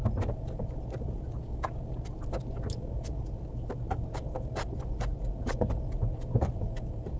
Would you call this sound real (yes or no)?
yes